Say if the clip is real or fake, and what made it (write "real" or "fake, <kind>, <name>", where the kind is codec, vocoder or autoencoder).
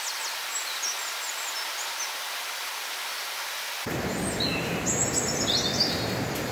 real